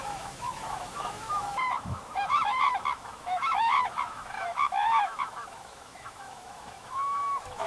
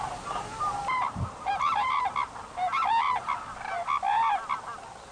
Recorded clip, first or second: second